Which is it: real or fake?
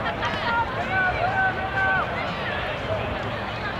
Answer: real